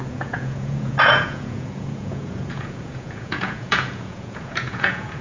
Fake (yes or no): yes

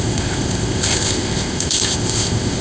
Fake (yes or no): yes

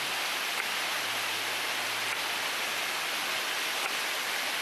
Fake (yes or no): no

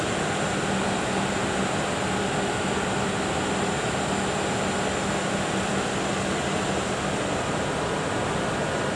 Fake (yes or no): no